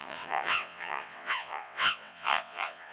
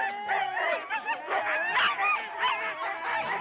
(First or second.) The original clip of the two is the second